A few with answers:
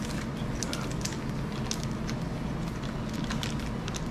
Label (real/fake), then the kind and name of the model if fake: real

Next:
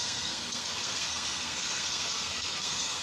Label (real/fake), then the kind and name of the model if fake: fake, codec, SNAC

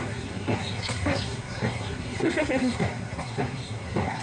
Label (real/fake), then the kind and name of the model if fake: fake, codec, SNAC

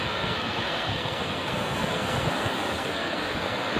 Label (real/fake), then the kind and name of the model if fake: fake, codec, SNAC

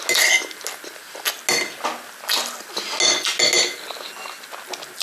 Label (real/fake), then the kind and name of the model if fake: real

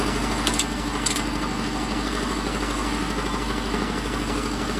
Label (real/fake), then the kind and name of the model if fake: fake, codec, SNAC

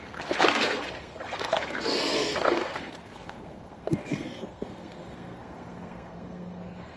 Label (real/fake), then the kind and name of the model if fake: fake, codec, SNAC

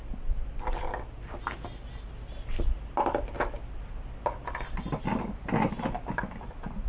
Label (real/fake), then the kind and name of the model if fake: real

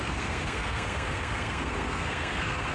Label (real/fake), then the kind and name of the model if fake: fake, codec, SNAC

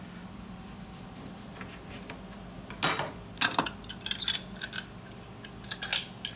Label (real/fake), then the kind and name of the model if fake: real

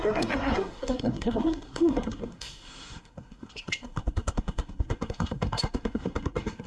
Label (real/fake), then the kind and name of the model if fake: fake, codec, SNAC